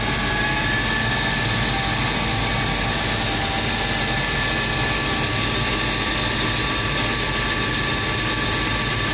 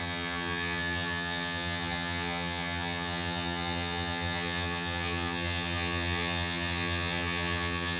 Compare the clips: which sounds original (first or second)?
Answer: first